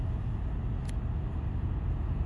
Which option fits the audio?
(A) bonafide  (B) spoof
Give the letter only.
A